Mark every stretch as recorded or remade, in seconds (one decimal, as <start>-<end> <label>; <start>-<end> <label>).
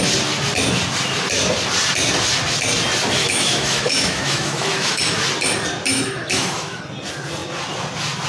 0.0-3.2 recorded; 3.2-5.0 remade; 5.0-5.9 recorded; 5.9-6.8 remade; 6.8-8.3 recorded